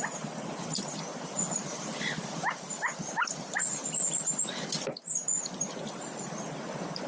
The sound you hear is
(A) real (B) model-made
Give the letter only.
A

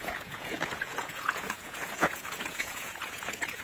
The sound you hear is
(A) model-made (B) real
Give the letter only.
A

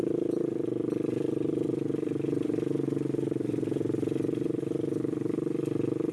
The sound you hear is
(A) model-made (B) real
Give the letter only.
B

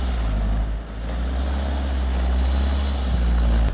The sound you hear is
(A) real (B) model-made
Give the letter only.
A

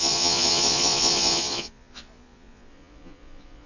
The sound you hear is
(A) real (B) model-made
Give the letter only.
B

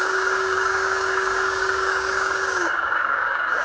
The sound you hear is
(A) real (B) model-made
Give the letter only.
B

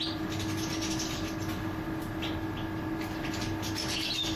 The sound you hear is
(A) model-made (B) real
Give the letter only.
A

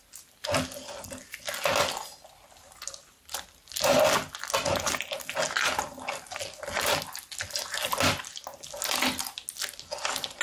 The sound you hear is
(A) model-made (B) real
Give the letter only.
B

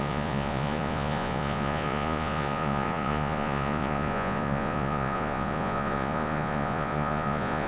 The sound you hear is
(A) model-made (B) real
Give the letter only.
A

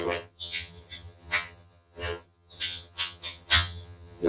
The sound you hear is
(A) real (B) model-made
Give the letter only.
B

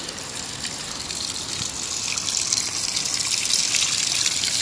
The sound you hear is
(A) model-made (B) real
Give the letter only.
B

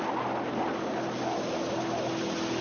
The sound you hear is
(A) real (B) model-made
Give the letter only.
A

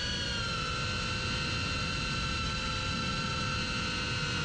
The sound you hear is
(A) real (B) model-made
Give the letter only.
A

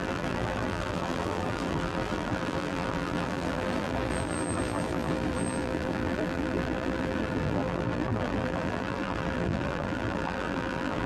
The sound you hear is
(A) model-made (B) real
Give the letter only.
A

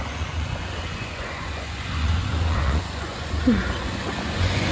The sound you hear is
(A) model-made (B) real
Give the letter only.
A